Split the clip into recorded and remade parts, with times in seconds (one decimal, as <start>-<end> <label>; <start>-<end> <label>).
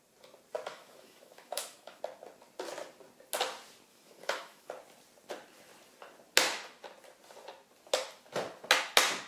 0.0-0.7 recorded; 0.7-2.0 remade; 2.0-3.9 recorded; 3.9-4.7 remade; 4.7-9.3 recorded